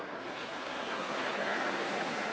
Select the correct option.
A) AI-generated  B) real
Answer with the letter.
A